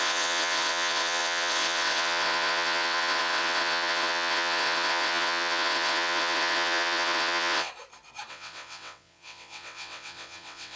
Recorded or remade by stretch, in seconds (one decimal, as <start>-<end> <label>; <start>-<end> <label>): 0.0-7.7 remade; 7.7-8.3 recorded; 8.3-10.8 remade